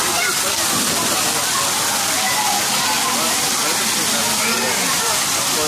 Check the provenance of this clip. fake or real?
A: real